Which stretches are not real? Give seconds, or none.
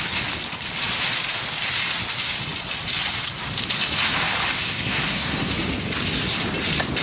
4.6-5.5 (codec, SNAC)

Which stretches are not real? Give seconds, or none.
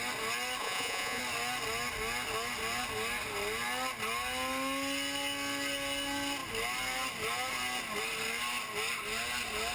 0.6-1.2 (vocoder, Vocos)